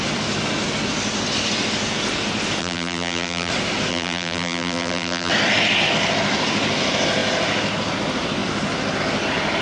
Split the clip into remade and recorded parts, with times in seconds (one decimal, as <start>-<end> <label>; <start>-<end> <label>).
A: 0.0-2.6 recorded; 2.6-3.5 remade; 3.5-3.9 recorded; 3.9-5.3 remade; 5.3-9.6 recorded